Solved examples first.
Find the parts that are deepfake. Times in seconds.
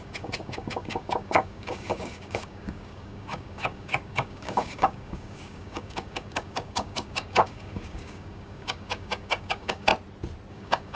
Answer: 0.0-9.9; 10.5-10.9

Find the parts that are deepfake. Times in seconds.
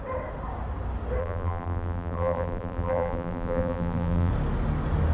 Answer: 1.2-4.3